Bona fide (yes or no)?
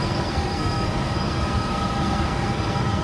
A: no